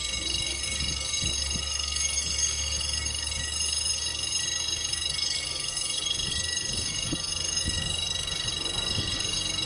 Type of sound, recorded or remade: remade